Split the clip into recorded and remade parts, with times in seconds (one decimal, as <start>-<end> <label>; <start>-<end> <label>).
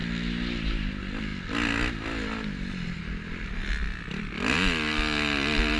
0.0-5.8 recorded